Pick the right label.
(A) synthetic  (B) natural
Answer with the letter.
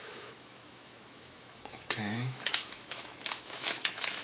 A